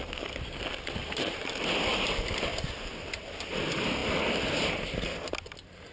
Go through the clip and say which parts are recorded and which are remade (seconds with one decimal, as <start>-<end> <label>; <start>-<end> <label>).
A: 0.0-1.0 recorded; 1.0-1.5 remade; 1.5-5.9 recorded